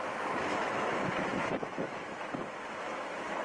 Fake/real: fake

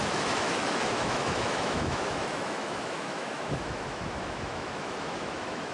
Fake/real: fake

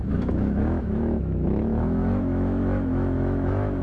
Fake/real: fake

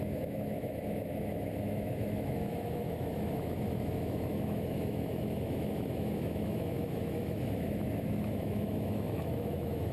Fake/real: fake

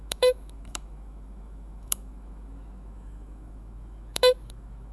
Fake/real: fake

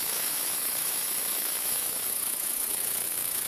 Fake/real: fake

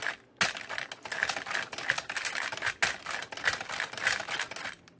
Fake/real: real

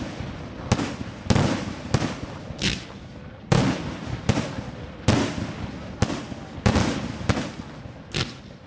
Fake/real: real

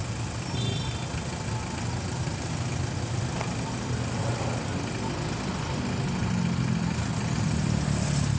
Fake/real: real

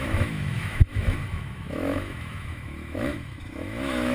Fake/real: fake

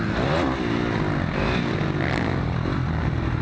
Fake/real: real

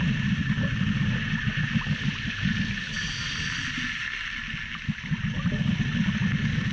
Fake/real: real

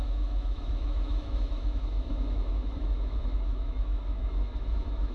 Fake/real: fake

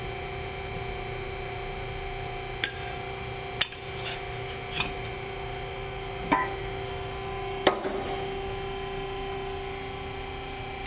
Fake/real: real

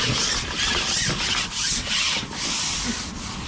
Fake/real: real